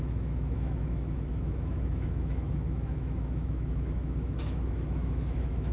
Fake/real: fake